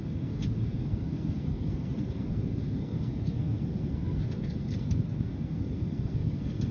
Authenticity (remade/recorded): remade